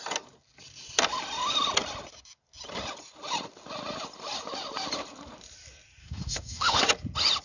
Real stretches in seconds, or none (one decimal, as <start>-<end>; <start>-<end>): 0.0-6.0; 6.8-7.4